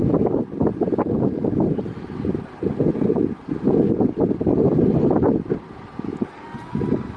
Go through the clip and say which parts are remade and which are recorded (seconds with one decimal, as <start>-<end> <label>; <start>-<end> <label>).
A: 0.0-7.2 recorded